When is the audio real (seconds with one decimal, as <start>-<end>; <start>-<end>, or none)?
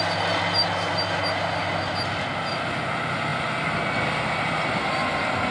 0.0-5.5